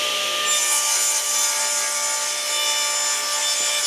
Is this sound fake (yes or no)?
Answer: no